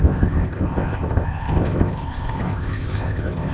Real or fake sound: fake